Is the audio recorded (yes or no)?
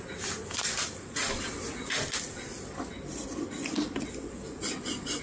yes